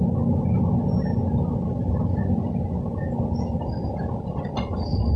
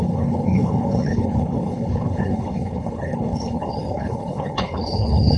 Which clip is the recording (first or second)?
first